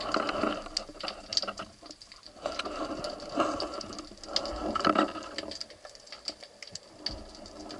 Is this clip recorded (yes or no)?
yes